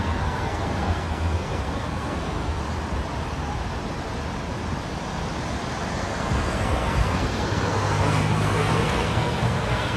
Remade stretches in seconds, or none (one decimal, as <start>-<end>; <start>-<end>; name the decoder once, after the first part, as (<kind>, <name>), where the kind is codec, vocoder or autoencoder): 0.0-2.6 (codec, SNAC); 5.9-10.0